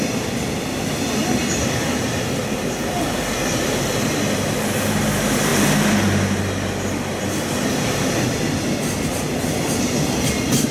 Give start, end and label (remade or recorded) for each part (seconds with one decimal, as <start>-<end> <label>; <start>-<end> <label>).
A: 0.0-10.7 recorded